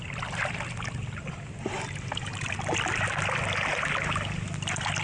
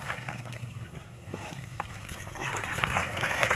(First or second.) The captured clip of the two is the first